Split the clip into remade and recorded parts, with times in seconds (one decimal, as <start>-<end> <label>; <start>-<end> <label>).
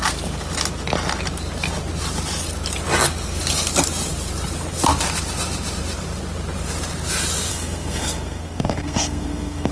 0.0-7.5 recorded; 7.5-9.7 remade